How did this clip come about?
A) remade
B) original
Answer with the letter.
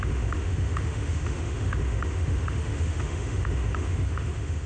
A